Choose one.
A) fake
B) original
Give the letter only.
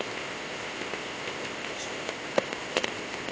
A